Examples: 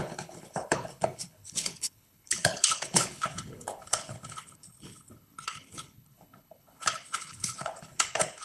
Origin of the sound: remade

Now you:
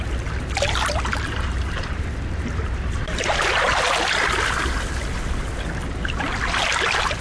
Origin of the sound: recorded